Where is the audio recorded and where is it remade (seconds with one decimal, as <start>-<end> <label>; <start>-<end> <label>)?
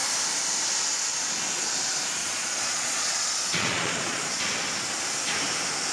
0.0-2.2 recorded; 2.2-4.4 remade; 4.4-5.9 recorded